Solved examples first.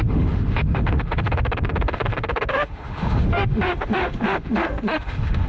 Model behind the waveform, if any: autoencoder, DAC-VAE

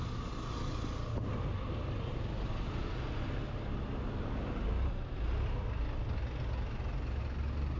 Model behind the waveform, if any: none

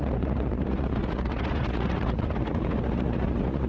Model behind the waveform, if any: vocoder, Vocos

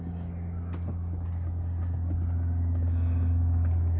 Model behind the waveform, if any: none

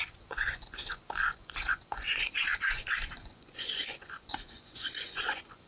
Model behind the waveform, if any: vocoder, Vocos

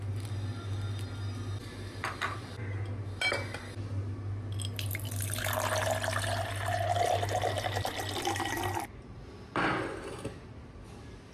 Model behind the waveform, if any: none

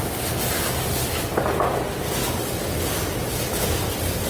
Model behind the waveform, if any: none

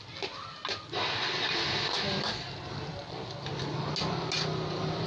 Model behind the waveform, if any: none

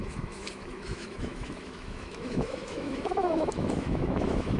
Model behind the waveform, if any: autoencoder, DAC-VAE